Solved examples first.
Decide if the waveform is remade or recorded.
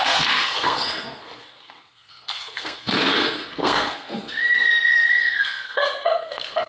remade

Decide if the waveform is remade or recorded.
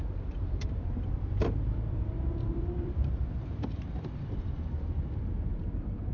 remade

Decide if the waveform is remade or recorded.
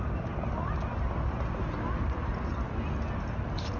recorded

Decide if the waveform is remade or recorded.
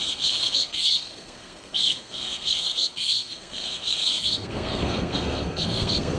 remade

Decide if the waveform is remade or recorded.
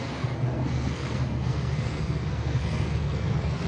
remade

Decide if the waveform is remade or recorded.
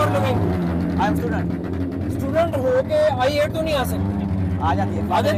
recorded